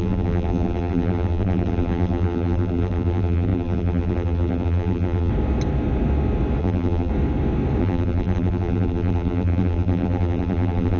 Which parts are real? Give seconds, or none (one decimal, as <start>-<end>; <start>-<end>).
5.3-6.6; 7.1-7.8